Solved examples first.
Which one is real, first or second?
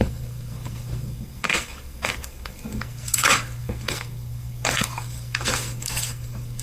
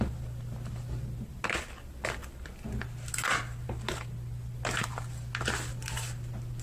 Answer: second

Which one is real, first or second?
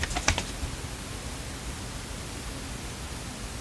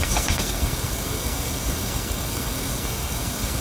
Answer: first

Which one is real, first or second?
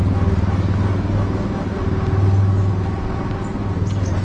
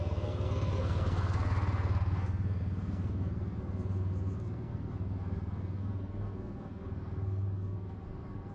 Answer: first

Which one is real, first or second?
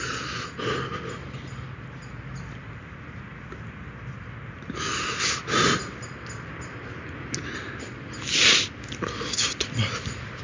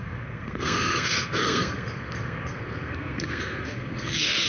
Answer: first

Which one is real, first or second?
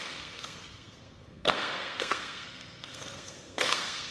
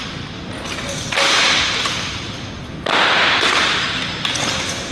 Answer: second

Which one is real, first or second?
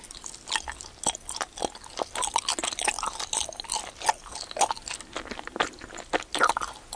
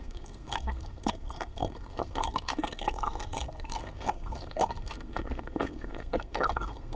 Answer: first